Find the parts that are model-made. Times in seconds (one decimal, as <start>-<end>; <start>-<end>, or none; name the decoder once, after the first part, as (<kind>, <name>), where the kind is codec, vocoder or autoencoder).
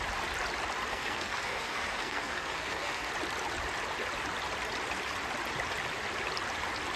0.9-3.1 (codec, SNAC)